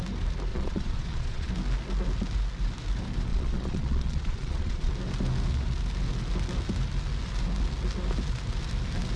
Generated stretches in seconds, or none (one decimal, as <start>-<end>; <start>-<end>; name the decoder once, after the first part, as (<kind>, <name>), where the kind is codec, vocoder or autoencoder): 0.5-1.5 (vocoder, Vocos); 3.3-4.9